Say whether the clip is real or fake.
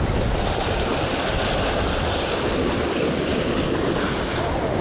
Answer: real